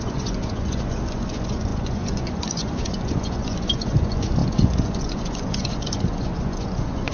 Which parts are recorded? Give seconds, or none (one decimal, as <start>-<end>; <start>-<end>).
none